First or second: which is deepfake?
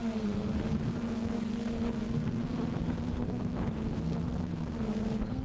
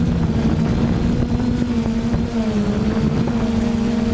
first